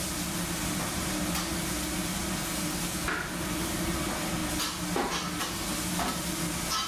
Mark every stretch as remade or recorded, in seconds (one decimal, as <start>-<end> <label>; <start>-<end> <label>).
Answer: 0.0-6.9 recorded